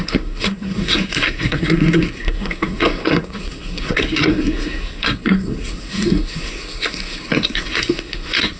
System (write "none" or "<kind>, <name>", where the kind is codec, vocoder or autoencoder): codec, SNAC